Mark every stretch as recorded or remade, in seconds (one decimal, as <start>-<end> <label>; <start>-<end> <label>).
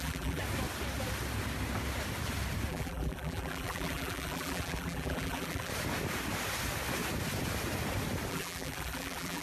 0.0-0.4 remade; 0.4-2.7 recorded; 2.7-5.7 remade; 5.7-8.3 recorded; 8.3-9.4 remade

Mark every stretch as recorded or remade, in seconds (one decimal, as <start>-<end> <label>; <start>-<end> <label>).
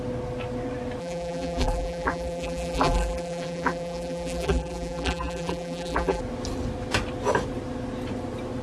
0.0-1.0 recorded; 1.0-6.2 remade; 6.2-8.6 recorded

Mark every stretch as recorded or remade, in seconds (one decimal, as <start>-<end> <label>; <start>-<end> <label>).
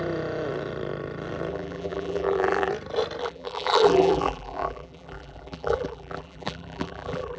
0.0-1.5 recorded; 1.5-2.7 remade; 2.7-3.2 recorded; 3.2-7.4 remade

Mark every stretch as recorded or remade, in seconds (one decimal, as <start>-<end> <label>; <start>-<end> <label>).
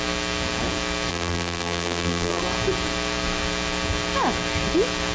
0.0-1.1 recorded; 1.1-2.4 remade; 2.4-5.1 recorded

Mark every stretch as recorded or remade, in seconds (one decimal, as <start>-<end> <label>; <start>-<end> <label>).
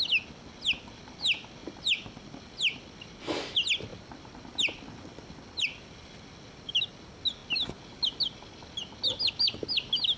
0.0-1.6 recorded; 1.6-2.8 remade; 2.8-10.2 recorded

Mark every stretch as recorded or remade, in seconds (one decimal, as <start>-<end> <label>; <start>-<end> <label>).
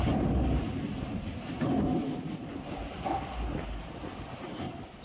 0.0-1.9 remade; 1.9-5.0 recorded